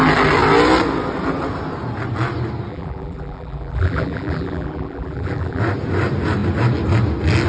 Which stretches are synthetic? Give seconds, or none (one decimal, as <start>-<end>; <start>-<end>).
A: 2.7-5.6